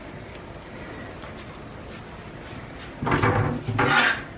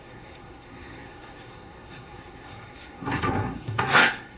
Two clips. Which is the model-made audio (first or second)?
second